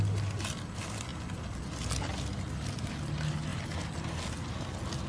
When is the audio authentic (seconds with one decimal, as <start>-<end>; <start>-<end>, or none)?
0.0-5.1